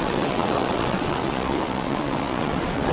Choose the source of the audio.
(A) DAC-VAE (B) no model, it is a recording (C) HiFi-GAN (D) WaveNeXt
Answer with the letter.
D